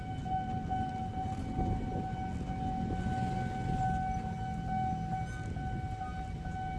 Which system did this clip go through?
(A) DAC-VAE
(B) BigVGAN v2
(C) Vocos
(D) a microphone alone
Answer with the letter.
D